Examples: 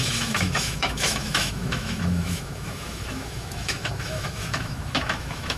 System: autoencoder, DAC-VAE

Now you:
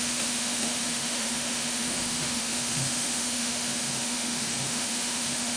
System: autoencoder, DAC-VAE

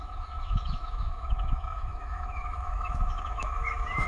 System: autoencoder, DAC-VAE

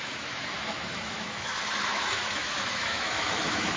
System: autoencoder, DAC-VAE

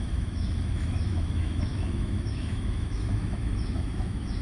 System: autoencoder, DAC-VAE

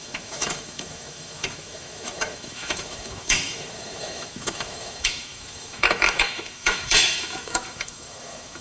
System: autoencoder, DAC-VAE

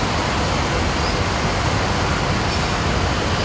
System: none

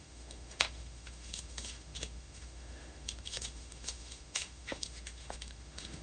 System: autoencoder, DAC-VAE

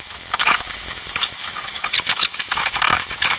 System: autoencoder, DAC-VAE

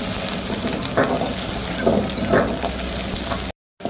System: none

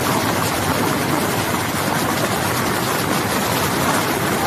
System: none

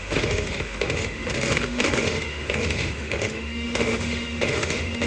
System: autoencoder, DAC-VAE